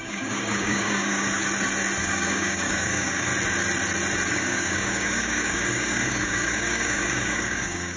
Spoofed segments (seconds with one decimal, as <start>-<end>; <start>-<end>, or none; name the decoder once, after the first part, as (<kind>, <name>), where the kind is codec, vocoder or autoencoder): 0.0-1.4 (codec, DAC); 2.0-3.3; 4.3-8.0